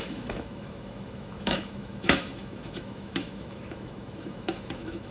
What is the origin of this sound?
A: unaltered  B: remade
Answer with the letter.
B